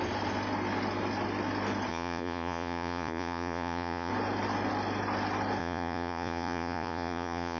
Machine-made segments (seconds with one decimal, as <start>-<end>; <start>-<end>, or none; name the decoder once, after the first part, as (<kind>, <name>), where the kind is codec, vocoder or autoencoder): 1.9-4.1 (vocoder, Vocos); 5.6-7.6

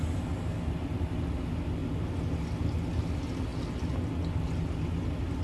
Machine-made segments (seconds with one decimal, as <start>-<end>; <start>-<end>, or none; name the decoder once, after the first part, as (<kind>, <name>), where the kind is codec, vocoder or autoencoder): none

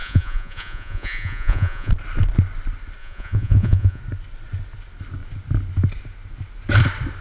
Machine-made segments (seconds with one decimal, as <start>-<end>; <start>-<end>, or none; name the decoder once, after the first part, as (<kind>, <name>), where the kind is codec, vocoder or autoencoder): 0.0-1.9 (vocoder, Vocos); 3.0-4.0

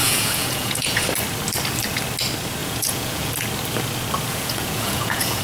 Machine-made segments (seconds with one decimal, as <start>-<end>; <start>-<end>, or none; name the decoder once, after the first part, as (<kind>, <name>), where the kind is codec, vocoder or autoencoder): 0.0-1.0 (vocoder, Vocos); 2.6-3.3; 4.3-5.4

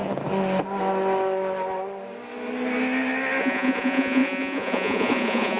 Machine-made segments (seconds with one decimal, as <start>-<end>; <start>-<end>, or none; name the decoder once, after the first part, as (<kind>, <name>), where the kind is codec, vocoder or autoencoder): 3.4-5.6 (vocoder, Vocos)

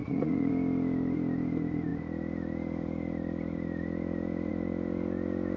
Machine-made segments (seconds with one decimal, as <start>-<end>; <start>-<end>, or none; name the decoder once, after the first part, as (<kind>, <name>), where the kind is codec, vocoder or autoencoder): 0.0-0.5 (vocoder, Vocos)

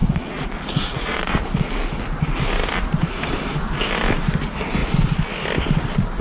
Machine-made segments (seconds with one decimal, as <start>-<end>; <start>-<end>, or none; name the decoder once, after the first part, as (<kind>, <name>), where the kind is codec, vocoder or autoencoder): 0.0-1.7 (vocoder, Vocos)

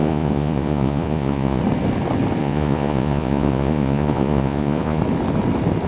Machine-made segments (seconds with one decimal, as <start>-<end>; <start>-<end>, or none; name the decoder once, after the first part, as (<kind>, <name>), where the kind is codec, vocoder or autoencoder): 0.0-1.6 (vocoder, Vocos); 2.4-5.0